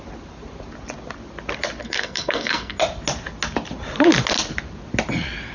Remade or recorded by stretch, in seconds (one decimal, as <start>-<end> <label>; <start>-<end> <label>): 0.0-1.8 recorded; 1.8-2.8 remade; 2.8-5.5 recorded